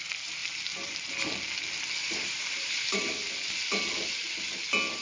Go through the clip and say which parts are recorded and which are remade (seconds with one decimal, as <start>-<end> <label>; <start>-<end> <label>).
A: 0.0-0.4 recorded; 0.4-1.1 remade; 1.1-2.0 recorded; 2.0-3.0 remade; 3.0-5.0 recorded